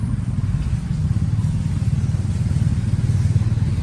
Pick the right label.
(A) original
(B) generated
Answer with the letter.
A